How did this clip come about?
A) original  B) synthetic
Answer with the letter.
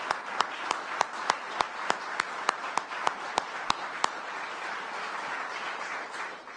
A